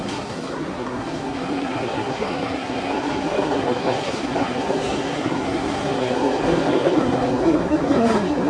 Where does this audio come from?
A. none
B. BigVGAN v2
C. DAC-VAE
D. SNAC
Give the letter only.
D